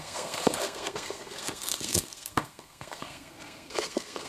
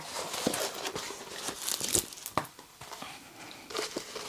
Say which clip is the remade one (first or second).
first